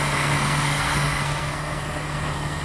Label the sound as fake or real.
fake